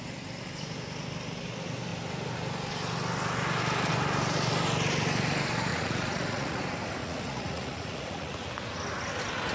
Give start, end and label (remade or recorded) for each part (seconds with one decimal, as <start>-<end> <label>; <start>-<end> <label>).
0.0-5.7 recorded; 5.7-6.6 remade; 6.6-7.0 recorded; 7.0-8.5 remade; 8.5-9.5 recorded